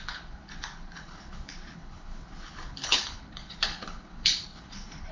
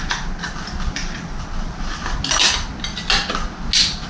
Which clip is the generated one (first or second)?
first